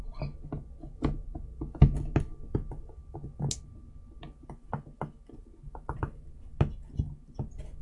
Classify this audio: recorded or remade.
recorded